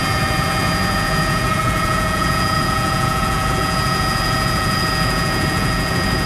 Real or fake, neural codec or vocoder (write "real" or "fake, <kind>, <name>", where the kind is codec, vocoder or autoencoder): fake, vocoder, Vocos